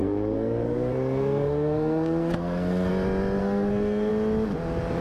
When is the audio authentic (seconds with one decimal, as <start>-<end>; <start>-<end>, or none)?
2.9-3.4; 4.1-5.0